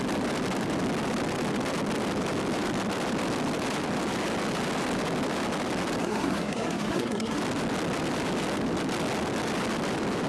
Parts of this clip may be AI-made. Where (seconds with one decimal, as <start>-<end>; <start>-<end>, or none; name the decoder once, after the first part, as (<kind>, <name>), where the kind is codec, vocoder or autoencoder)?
6.0-7.4 (codec, SNAC)